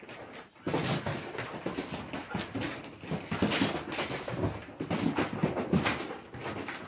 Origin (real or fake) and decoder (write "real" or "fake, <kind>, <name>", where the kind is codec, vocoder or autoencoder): real